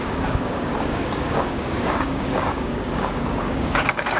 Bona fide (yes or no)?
no